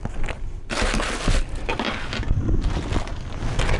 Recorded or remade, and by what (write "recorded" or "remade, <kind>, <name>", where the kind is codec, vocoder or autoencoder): recorded